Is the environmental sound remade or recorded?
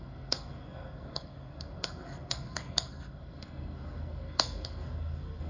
remade